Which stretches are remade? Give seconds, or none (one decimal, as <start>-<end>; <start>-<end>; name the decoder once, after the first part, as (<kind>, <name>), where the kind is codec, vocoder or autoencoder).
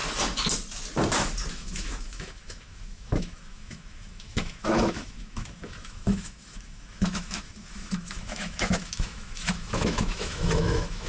1.5-11.1 (autoencoder, DAC-VAE)